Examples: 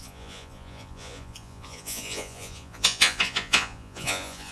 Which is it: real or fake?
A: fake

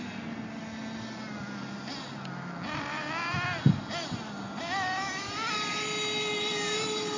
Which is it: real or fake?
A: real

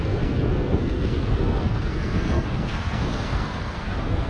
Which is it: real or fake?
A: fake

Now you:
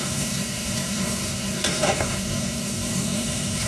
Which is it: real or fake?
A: fake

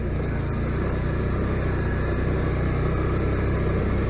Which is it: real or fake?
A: real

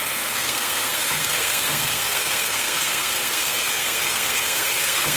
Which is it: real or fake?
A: fake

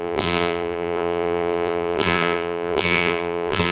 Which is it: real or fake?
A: fake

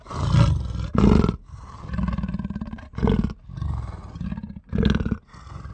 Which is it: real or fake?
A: real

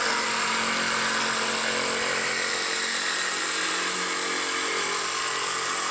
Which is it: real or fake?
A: real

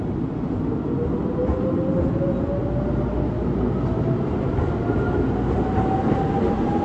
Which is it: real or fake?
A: real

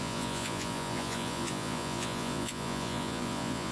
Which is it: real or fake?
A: fake